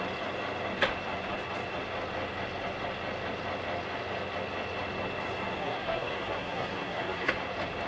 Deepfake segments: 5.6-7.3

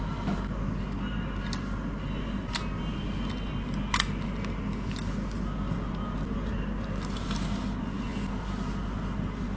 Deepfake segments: none

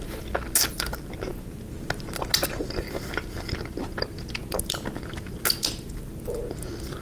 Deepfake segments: none